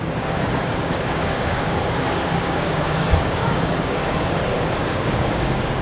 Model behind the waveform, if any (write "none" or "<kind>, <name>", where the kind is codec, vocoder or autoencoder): codec, DAC